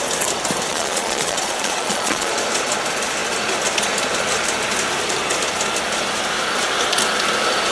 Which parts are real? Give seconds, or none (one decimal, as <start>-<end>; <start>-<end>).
0.0-0.7; 2.3-7.7